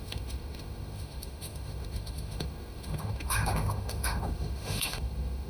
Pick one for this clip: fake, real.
fake